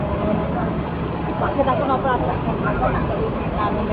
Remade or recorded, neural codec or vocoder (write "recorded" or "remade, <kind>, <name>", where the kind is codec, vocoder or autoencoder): recorded